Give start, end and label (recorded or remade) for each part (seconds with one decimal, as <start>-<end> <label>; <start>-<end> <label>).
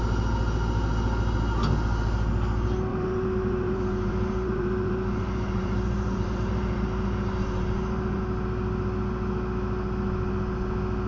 0.0-2.9 recorded; 2.9-8.2 remade; 8.2-11.1 recorded